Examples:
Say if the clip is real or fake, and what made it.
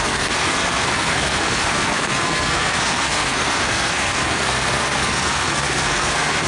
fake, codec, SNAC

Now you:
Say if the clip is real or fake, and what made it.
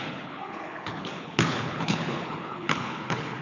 fake, codec, HILCodec